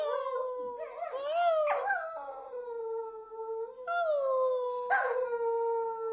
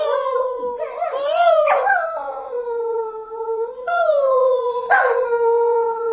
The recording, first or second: first